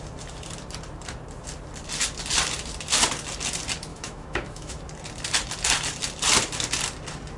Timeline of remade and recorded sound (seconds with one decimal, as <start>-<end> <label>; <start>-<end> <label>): 0.0-3.9 recorded; 3.9-4.8 remade; 4.8-7.4 recorded